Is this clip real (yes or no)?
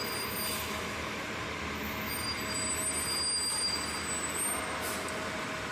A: yes